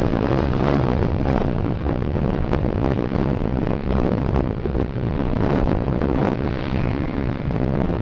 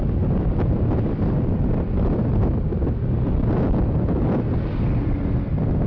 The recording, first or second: second